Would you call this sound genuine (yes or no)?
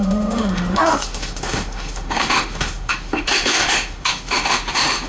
no